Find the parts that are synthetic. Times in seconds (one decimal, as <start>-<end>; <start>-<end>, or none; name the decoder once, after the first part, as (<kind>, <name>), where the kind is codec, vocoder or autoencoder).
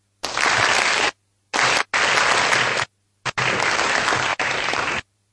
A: 4.3-5.3 (vocoder, BigVGAN v2)